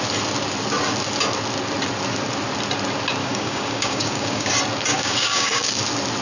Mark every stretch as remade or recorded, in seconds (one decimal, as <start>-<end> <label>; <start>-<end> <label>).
0.0-3.2 recorded; 3.2-4.5 remade; 4.5-4.9 recorded; 4.9-5.7 remade; 5.7-6.2 recorded